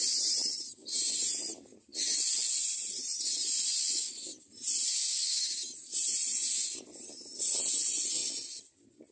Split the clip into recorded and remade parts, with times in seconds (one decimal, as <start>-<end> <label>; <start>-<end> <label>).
0.0-9.1 recorded